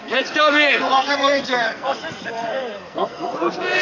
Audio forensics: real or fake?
fake